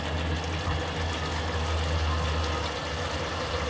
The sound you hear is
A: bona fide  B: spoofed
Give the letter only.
A